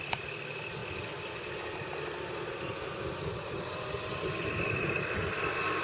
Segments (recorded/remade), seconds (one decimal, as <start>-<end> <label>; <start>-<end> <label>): 0.0-5.8 recorded